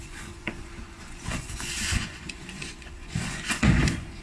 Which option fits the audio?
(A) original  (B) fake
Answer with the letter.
B